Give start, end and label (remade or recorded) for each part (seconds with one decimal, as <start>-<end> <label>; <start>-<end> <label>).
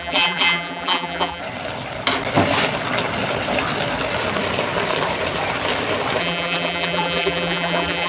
0.0-1.4 remade; 1.4-6.2 recorded; 6.2-8.1 remade